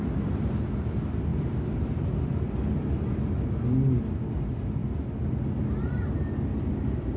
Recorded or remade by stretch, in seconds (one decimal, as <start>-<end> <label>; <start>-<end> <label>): 0.0-1.3 recorded; 1.3-2.8 remade; 2.8-7.2 recorded